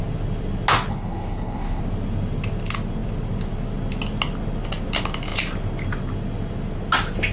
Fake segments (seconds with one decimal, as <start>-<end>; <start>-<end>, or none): 0.9-1.8